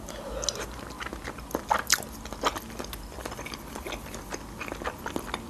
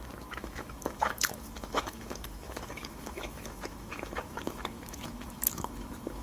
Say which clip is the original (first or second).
first